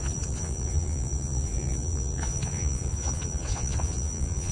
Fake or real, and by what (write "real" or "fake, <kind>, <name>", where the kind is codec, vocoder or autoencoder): fake, vocoder, Vocos